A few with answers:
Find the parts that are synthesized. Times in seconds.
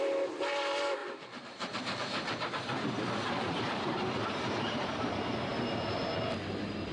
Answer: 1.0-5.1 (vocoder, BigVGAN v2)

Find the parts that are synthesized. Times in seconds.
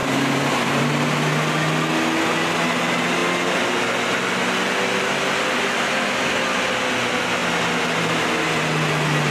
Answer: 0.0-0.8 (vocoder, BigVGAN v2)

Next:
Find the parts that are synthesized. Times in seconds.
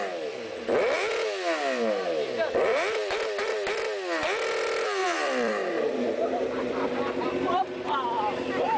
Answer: 2.7-3.5 (vocoder, BigVGAN v2); 5.0-8.8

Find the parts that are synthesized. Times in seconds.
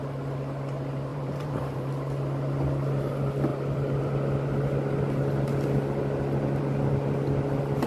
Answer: 1.1-1.9 (vocoder, BigVGAN v2)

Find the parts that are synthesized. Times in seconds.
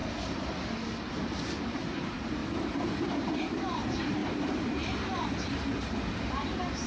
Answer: 1.1-6.9 (vocoder, BigVGAN v2)